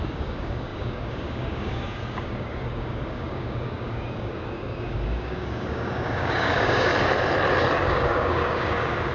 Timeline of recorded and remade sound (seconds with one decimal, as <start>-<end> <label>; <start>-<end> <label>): 0.0-6.9 remade; 6.9-7.8 recorded; 7.8-9.1 remade